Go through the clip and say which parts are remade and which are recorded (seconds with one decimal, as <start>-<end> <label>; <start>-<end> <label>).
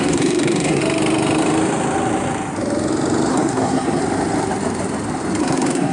0.0-0.8 remade; 0.8-3.3 recorded; 3.3-4.0 remade; 4.0-5.4 recorded; 5.4-5.9 remade